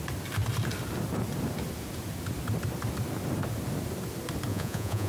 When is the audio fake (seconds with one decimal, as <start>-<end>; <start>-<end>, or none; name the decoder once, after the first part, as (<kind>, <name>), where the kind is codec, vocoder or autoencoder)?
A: 4.5-5.1 (vocoder, Vocos)